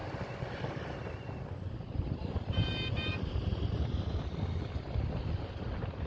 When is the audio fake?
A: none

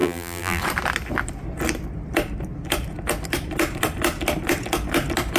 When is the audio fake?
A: 0.0-0.6 (vocoder, BigVGAN v2)

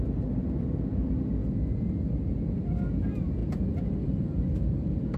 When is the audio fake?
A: none

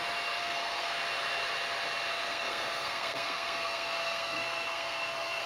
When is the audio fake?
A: 0.4-1.0 (codec, SNAC); 2.1-5.5